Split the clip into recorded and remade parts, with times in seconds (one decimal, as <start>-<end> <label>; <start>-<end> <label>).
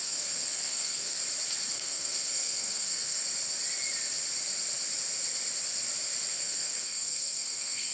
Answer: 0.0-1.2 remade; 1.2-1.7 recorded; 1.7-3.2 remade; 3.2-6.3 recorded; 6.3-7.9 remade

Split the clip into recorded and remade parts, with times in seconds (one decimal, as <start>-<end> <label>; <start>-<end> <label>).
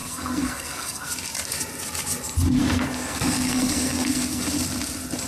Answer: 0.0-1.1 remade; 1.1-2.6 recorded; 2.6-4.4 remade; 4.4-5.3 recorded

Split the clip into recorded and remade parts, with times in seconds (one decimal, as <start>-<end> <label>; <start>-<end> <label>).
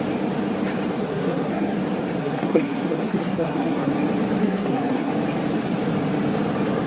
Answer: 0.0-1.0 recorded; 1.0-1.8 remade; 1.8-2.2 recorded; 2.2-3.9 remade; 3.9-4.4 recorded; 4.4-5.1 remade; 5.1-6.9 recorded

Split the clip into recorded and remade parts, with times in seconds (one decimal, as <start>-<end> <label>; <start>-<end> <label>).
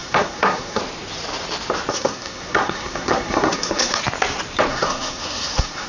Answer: 0.0-0.8 remade; 0.8-1.9 recorded; 1.9-4.0 remade; 4.0-4.7 recorded; 4.7-5.9 remade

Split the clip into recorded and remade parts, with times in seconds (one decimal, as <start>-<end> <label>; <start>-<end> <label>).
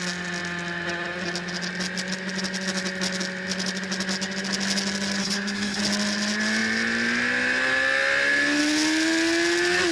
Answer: 0.0-5.2 recorded; 5.2-5.8 remade; 5.8-9.9 recorded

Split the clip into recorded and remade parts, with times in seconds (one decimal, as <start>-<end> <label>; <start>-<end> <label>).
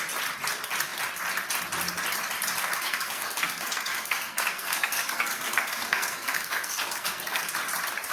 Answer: 0.0-2.6 recorded; 2.6-7.5 remade; 7.5-8.1 recorded